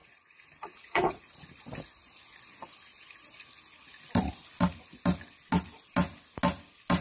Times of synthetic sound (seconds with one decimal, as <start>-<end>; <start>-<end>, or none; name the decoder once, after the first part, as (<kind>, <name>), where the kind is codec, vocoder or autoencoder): 0.0-1.3 (vocoder, Vocos)